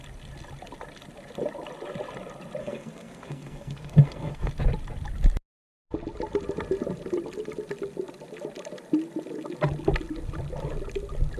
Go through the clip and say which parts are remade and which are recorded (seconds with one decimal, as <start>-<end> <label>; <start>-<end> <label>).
0.0-2.6 recorded; 2.6-4.5 remade; 4.5-11.4 recorded